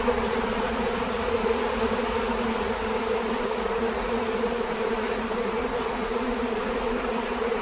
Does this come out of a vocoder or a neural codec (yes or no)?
yes